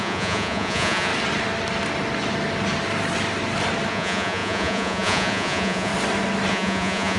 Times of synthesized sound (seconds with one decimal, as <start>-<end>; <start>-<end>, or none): 0.0-1.1; 3.9-5.9; 6.5-7.2

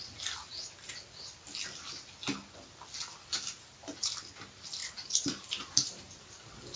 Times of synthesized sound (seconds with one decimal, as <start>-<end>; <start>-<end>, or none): 3.3-4.2; 4.8-6.2

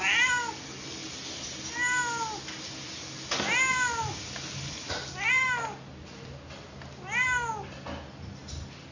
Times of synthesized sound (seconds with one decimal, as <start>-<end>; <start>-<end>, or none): none

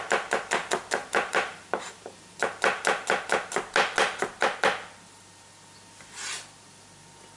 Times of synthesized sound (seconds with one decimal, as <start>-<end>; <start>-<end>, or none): 1.0-2.4

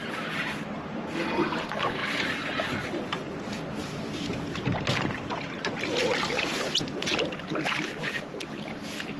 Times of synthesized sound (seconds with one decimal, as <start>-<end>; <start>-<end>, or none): 2.0-2.8

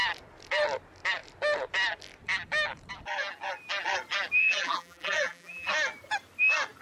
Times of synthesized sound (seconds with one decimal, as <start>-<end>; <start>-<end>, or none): 4.4-5.7